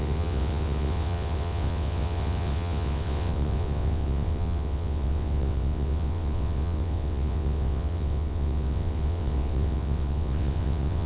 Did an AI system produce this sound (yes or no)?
yes